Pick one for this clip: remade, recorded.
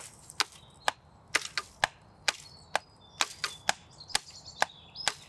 recorded